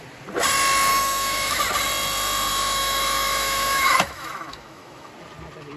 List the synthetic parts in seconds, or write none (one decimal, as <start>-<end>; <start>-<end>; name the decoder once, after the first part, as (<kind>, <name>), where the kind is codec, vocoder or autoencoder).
0.9-1.6 (autoencoder, DAC-VAE); 2.5-5.1